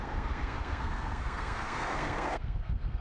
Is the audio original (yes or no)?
no